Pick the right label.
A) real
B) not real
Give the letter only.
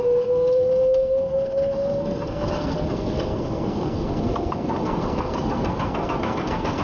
B